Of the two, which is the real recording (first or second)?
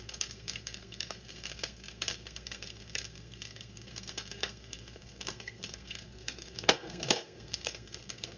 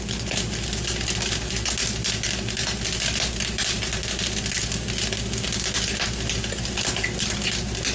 second